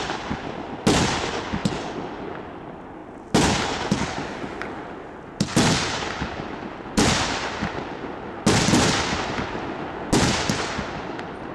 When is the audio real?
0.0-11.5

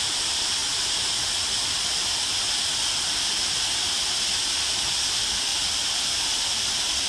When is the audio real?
0.0-7.1